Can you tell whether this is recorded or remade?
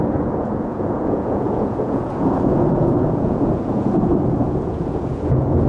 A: remade